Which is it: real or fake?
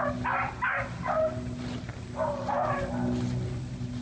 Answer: real